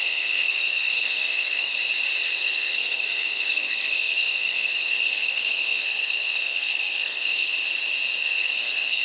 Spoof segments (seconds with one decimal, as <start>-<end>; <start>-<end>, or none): 0.0-1.7; 2.4-7.5; 8.2-9.0